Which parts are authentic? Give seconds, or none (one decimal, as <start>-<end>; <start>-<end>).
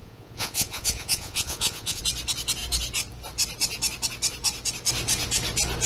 2.0-5.9